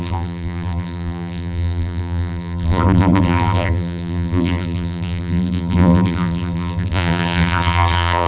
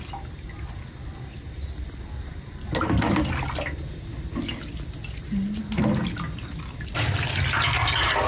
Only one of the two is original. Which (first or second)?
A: second